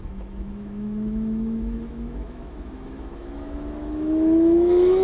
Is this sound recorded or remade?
remade